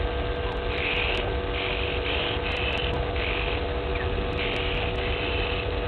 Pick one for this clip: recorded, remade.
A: recorded